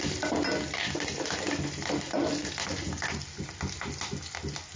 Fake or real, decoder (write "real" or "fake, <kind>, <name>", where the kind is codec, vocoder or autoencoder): real